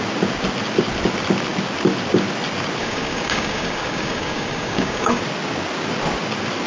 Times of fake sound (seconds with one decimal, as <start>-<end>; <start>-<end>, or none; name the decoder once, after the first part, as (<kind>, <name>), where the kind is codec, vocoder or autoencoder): 2.8-5.2 (codec, DAC)